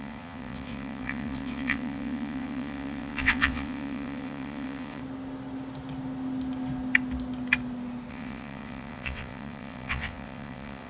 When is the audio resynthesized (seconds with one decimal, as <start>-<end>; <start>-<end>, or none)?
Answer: 0.0-5.0; 8.1-10.9